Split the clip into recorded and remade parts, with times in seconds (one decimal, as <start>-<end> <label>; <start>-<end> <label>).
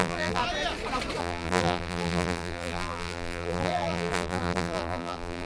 0.0-0.4 remade; 0.4-1.2 recorded; 1.2-5.5 remade